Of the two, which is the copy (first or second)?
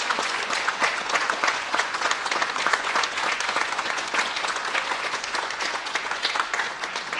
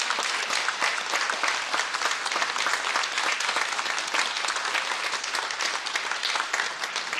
first